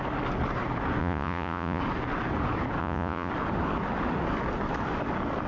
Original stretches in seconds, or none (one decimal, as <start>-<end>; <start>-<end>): 0.0-1.0; 1.8-2.8; 3.3-5.5